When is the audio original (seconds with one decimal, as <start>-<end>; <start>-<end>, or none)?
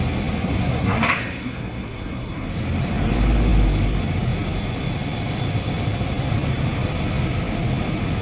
0.0-0.4; 2.5-8.2